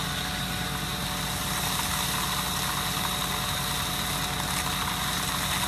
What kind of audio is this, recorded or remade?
recorded